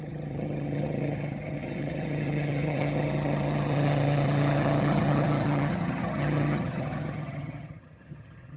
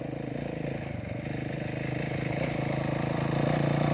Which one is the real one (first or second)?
second